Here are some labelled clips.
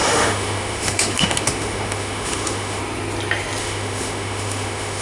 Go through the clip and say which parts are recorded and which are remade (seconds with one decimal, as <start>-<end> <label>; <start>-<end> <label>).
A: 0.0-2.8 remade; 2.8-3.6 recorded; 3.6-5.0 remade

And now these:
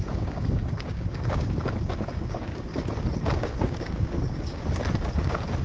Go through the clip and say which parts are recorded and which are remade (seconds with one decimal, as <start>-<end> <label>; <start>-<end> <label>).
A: 0.0-2.7 remade; 2.7-3.2 recorded; 3.2-4.5 remade; 4.5-5.1 recorded; 5.1-5.6 remade

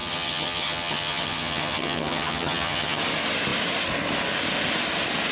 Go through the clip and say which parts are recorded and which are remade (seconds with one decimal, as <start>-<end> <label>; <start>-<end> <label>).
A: 0.0-3.0 remade; 3.0-5.3 recorded

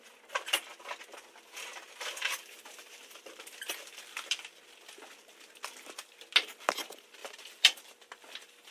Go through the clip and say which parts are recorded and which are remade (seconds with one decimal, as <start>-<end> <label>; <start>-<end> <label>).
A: 0.0-1.7 recorded; 1.7-3.0 remade; 3.0-7.2 recorded; 7.2-8.7 remade

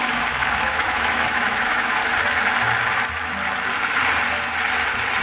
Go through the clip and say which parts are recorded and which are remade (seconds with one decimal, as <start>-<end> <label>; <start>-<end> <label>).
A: 0.0-2.0 remade; 2.0-5.2 recorded